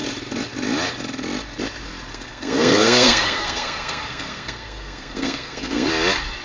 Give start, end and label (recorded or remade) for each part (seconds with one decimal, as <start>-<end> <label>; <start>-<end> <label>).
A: 0.0-2.1 recorded; 2.1-5.9 remade; 5.9-6.4 recorded